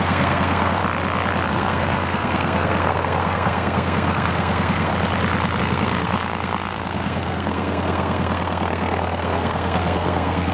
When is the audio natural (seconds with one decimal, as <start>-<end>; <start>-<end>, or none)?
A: 0.8-1.5; 4.9-5.6